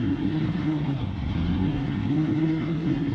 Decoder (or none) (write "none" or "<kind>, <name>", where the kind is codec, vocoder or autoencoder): codec, SNAC